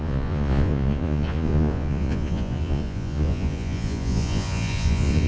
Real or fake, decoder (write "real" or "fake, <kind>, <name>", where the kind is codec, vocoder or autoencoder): fake, vocoder, Vocos